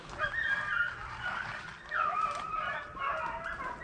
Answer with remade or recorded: recorded